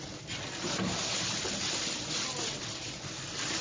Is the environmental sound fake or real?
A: real